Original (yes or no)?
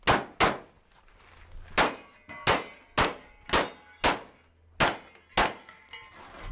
yes